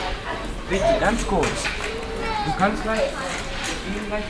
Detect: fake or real real